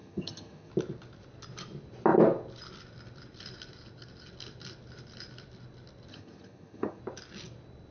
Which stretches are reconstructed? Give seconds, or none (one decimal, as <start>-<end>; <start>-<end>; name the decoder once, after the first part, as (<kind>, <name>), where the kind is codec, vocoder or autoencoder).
0.0-0.7 (vocoder, HiFi-GAN); 6.1-7.0